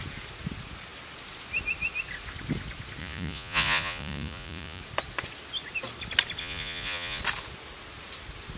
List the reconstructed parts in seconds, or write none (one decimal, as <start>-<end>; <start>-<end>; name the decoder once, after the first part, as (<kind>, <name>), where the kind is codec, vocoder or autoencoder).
3.0-4.8 (vocoder, Vocos); 6.4-7.2